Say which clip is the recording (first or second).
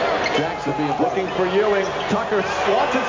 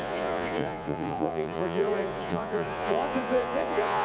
first